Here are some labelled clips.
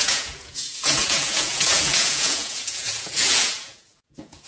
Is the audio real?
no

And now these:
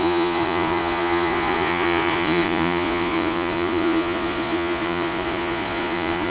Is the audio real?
no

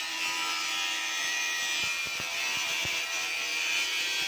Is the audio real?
no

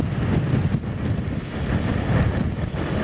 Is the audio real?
yes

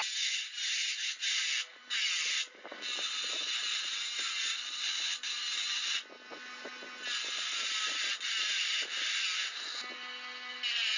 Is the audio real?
yes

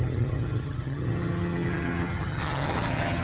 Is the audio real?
no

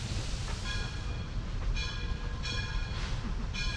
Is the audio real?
yes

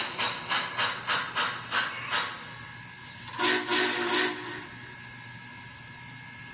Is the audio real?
yes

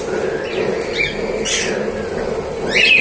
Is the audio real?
yes